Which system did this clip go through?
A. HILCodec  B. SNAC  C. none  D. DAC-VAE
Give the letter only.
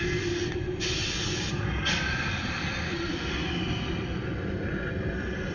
C